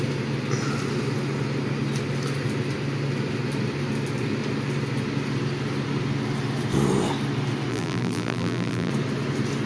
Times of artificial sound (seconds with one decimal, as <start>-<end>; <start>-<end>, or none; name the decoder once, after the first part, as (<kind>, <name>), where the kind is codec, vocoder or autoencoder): 7.7-8.9 (vocoder, BigVGAN v2)